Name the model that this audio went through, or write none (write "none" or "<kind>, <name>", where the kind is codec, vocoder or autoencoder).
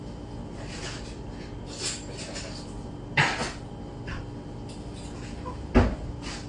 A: none